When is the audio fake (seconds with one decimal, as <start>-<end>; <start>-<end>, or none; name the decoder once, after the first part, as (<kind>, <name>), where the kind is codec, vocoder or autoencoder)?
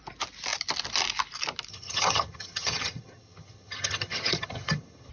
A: 1.7-5.1 (vocoder, HiFi-GAN)